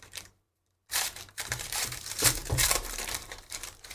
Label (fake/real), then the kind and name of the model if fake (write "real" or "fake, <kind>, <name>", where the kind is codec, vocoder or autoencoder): fake, vocoder, BigVGAN v2